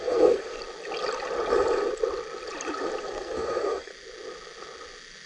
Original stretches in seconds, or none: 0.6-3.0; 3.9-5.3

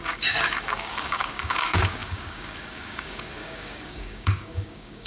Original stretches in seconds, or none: none

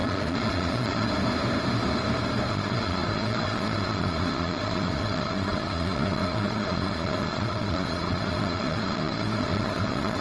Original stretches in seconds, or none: 1.1-2.5

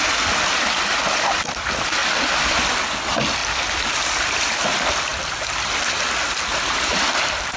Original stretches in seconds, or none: 0.0-2.0; 2.8-5.1; 6.1-7.6

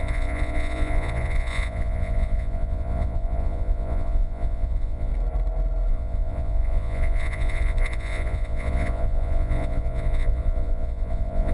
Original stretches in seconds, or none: 5.1-5.9